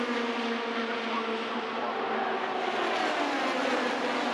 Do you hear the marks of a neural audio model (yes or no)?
no